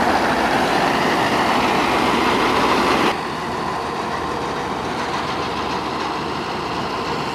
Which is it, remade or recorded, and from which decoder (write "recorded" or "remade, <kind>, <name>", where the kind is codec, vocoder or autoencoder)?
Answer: recorded